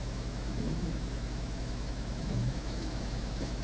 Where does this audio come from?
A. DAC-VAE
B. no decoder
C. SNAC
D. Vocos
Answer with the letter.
A